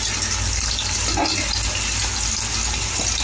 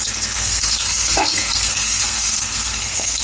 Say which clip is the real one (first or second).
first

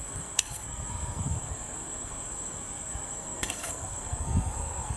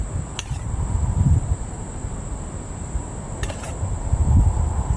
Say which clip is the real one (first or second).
second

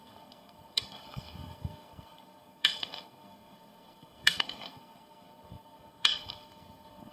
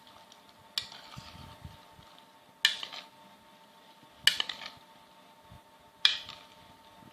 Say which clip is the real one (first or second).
second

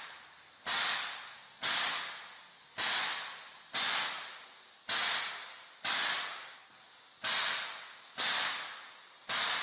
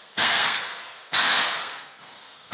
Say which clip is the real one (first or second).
first